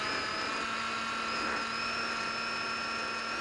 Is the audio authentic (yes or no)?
yes